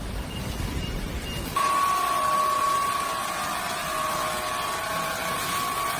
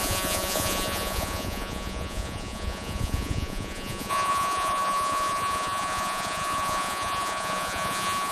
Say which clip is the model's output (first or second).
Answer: second